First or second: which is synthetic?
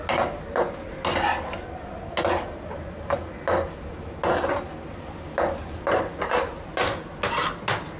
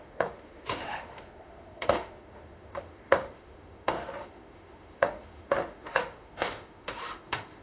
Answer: second